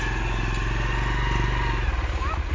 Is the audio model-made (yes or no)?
no